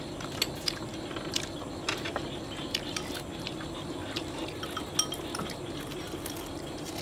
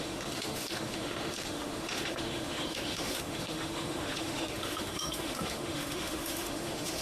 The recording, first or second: first